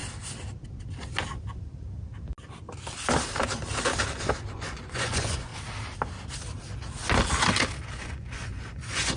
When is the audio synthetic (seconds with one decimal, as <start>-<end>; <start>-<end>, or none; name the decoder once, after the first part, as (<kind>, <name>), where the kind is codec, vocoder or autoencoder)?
4.5-5.5 (vocoder, Vocos); 8.0-9.2